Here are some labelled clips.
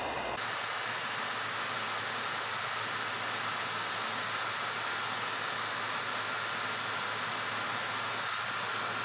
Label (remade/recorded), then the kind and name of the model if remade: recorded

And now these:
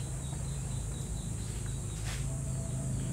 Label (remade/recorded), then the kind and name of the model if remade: remade, vocoder, BigVGAN v2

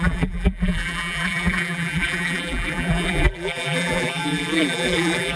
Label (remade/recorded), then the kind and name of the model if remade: remade, vocoder, BigVGAN v2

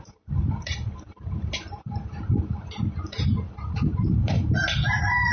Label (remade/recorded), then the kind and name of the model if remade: remade, vocoder, BigVGAN v2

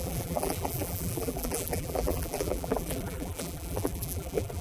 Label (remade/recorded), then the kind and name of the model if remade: remade, vocoder, BigVGAN v2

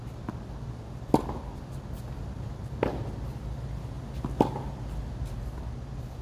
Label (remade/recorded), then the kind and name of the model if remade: recorded